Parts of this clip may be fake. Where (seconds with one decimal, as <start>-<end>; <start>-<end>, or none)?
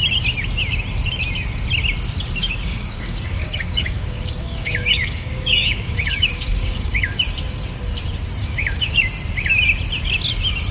2.4-7.2; 8.4-9.0